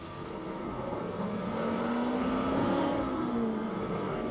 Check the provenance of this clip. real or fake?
fake